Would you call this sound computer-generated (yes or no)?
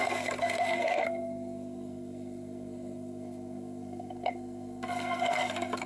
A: yes